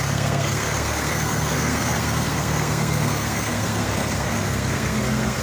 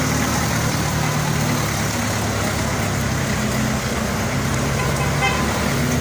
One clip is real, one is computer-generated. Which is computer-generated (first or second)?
first